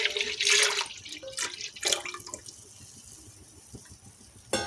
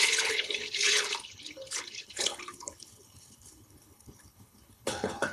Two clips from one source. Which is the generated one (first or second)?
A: second